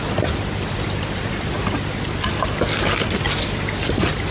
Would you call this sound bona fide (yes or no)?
yes